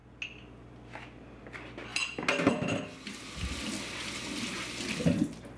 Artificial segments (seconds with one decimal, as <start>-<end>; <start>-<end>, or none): none